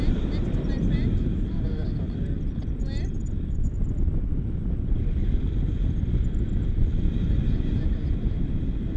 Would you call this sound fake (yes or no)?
no